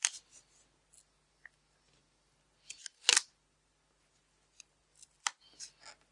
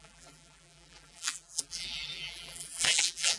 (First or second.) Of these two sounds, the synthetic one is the second